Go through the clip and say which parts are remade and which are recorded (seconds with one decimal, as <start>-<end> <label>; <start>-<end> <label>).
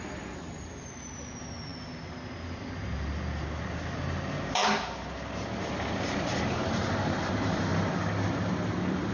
0.0-7.7 recorded; 7.7-9.1 remade